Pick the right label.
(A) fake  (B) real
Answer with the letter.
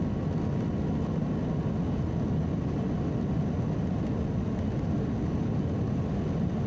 B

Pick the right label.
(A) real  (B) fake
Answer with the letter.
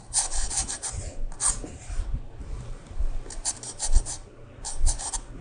A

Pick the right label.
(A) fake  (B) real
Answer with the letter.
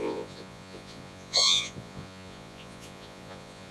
A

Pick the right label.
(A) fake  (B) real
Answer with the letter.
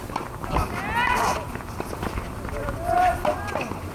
B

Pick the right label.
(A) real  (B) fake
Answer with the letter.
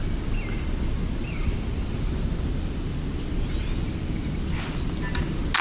A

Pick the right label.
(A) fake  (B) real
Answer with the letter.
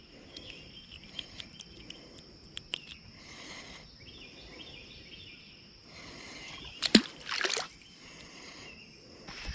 B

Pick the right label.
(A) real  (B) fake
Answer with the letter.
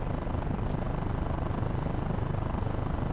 A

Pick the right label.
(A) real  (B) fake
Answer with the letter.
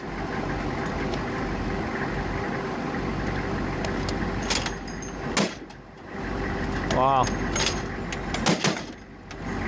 A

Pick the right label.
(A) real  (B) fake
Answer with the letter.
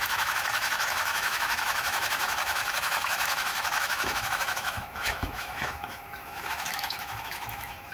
B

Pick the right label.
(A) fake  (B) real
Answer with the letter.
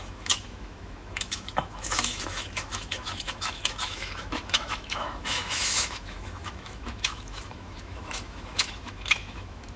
A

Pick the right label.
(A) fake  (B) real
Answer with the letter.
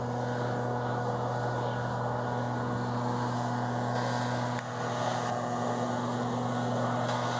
B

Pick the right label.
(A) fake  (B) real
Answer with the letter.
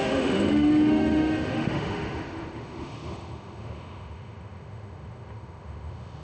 A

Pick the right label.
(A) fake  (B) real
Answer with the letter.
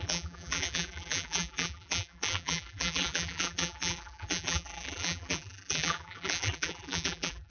A